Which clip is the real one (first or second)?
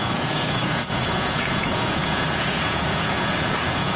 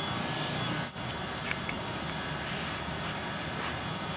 second